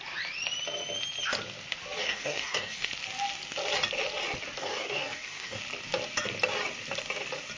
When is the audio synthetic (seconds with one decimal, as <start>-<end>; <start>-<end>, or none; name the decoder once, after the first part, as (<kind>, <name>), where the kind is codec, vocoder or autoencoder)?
2.0-2.9 (codec, DAC); 4.6-5.6